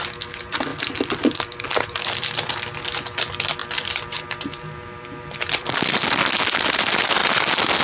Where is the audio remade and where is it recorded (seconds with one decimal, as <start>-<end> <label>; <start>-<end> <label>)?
0.0-0.7 recorded; 0.7-2.5 remade; 2.5-3.6 recorded; 3.6-6.4 remade; 6.4-7.2 recorded; 7.2-7.8 remade